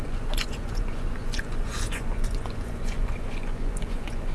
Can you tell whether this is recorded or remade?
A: remade